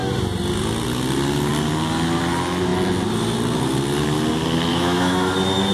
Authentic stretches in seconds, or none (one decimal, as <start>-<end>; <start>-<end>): 0.0-4.7; 5.3-5.7